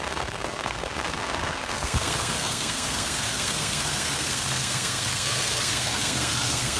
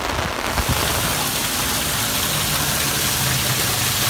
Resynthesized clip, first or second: first